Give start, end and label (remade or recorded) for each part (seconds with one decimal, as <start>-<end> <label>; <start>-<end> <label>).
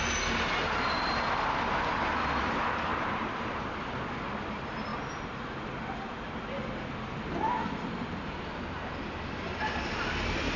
0.0-2.9 recorded; 2.9-3.6 remade; 3.6-10.6 recorded